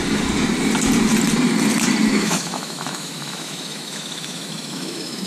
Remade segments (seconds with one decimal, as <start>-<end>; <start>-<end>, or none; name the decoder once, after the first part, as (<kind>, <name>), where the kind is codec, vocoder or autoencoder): 2.0-5.3 (autoencoder, DAC-VAE)